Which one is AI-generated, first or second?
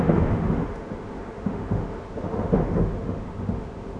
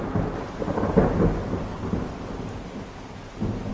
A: first